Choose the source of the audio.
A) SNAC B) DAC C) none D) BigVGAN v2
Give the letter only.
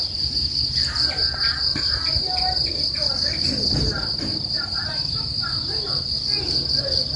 C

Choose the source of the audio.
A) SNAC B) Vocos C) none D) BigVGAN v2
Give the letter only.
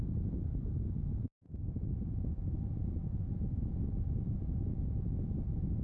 B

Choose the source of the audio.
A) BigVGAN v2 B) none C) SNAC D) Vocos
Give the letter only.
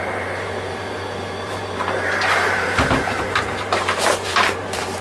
A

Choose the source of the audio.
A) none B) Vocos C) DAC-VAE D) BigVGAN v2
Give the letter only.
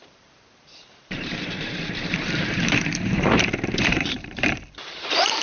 D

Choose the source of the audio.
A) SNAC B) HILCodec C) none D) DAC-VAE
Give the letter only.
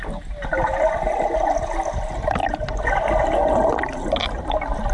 C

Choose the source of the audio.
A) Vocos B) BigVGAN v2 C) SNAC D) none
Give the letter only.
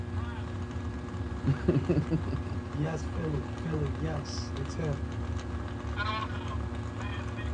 D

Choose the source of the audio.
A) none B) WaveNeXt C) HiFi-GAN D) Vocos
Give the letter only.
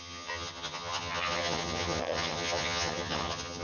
C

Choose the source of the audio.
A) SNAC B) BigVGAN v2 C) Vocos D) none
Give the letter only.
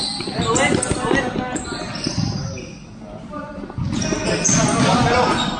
D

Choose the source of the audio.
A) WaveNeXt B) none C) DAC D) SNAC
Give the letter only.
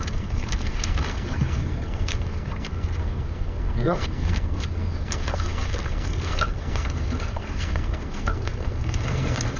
D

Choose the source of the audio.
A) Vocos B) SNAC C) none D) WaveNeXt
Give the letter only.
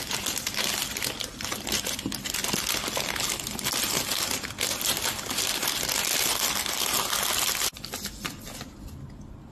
C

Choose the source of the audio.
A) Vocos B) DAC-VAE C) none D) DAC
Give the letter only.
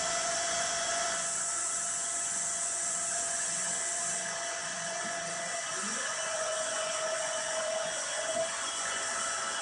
A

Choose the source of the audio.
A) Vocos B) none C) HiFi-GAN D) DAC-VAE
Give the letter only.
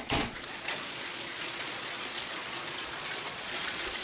A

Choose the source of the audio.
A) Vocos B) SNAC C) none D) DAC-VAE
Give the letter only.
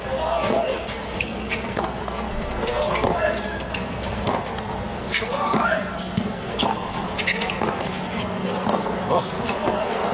B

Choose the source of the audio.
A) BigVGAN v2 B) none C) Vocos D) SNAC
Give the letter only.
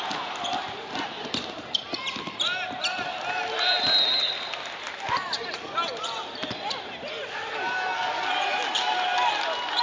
B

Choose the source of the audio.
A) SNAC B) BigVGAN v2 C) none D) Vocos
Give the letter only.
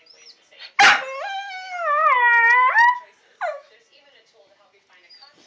C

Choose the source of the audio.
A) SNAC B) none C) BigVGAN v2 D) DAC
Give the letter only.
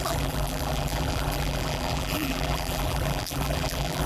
C